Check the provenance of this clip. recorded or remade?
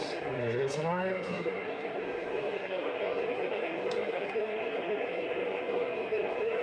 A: remade